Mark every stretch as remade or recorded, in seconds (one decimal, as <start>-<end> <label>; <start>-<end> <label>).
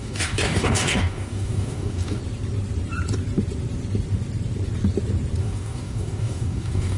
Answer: 0.0-2.2 remade; 2.2-5.4 recorded; 5.4-7.0 remade